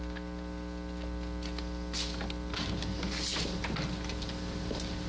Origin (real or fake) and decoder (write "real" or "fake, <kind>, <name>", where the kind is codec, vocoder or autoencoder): real